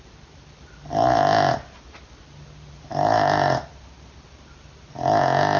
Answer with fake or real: real